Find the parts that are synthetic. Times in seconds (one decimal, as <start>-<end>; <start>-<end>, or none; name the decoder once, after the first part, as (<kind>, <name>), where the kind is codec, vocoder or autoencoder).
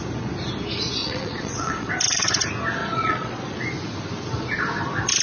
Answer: 1.0-1.9 (vocoder, Vocos); 2.8-3.6